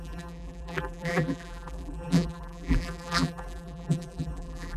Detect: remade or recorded remade